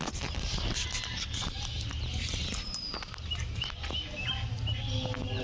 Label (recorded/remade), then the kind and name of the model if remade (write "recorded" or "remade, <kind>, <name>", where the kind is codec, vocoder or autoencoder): recorded